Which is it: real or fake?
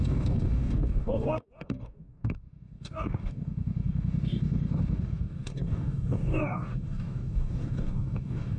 fake